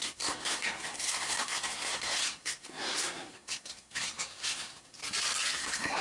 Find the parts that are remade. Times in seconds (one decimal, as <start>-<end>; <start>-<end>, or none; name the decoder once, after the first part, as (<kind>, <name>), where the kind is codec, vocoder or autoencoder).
0.0-5.0 (codec, SNAC); 5.6-6.0